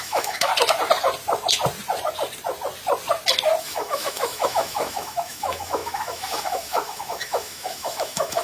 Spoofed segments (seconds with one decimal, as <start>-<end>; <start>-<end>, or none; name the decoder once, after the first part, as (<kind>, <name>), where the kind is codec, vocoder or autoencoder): 0.0-0.5 (autoencoder, DAC-VAE); 3.6-8.4